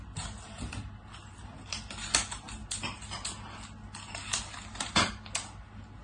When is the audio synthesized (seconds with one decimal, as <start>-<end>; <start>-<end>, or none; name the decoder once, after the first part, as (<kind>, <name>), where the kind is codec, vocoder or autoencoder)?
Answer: none